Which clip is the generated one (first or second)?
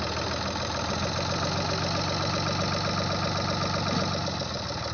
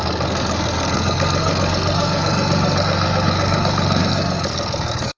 second